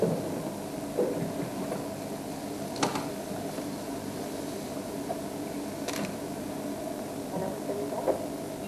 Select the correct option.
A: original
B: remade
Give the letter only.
A